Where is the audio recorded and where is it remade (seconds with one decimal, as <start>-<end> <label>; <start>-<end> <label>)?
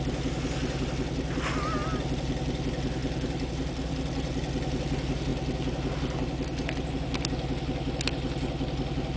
0.0-9.2 recorded